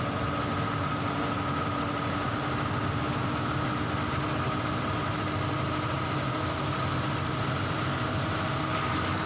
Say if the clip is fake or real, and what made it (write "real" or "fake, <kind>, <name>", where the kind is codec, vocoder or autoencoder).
real